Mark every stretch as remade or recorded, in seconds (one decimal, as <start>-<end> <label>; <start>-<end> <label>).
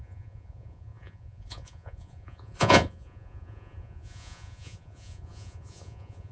0.0-6.3 remade